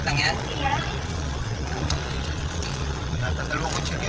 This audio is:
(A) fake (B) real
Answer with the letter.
A